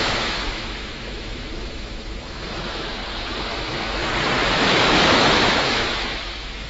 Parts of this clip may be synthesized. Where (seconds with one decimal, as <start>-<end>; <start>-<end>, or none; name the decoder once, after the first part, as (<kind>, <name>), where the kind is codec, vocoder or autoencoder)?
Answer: 0.0-3.0 (autoencoder, DAC-VAE); 3.5-4.0; 4.5-6.7